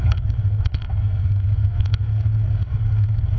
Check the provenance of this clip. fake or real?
fake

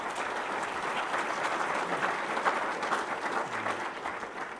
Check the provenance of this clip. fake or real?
real